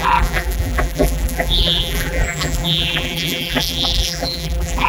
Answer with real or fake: fake